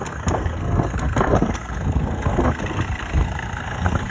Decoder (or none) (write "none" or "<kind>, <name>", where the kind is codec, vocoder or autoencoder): codec, SNAC